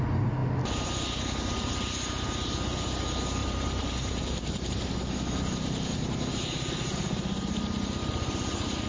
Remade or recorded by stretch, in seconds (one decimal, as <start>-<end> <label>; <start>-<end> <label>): 0.0-3.4 recorded; 3.4-4.7 remade; 4.7-8.9 recorded